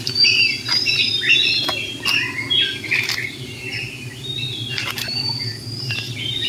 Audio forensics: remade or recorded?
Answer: remade